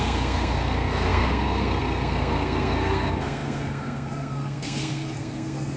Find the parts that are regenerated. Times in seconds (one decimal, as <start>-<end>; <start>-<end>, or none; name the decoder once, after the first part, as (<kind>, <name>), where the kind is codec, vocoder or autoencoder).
0.0-5.8 (codec, SNAC)